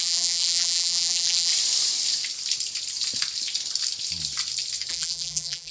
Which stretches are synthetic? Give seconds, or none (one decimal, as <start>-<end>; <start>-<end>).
0.0-1.5; 4.9-5.7